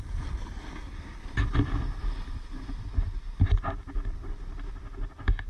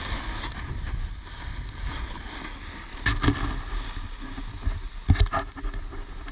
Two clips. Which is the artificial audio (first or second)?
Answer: first